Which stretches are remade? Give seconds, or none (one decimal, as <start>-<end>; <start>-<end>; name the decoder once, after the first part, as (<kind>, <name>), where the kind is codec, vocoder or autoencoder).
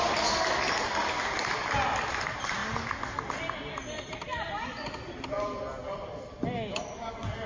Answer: none